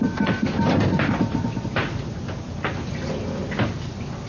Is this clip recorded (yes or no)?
yes